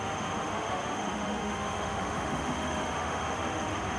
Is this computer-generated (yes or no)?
yes